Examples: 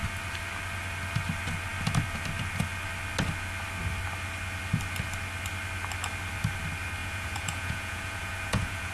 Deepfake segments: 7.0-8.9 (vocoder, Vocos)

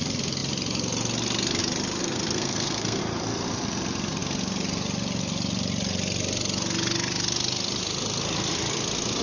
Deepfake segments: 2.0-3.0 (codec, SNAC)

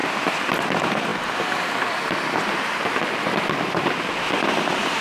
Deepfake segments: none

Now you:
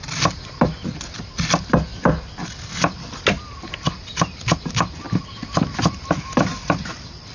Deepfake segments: none